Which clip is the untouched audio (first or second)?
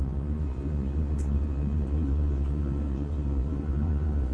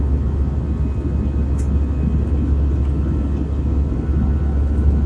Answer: second